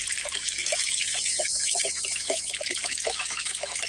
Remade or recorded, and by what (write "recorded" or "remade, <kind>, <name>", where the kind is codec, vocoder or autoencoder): remade, autoencoder, DAC-VAE